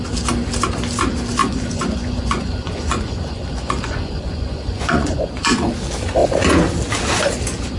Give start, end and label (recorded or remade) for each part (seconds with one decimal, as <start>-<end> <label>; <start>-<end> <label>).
0.0-1.4 recorded; 1.4-5.7 remade; 5.7-7.8 recorded